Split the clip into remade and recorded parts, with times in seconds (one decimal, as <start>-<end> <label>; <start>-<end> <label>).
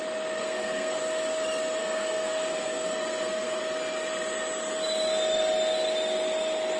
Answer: 0.0-0.4 recorded; 0.4-1.0 remade; 1.0-1.8 recorded; 1.8-3.6 remade; 3.6-6.8 recorded